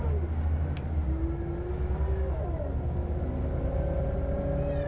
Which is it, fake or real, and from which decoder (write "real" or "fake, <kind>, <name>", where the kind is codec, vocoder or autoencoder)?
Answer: real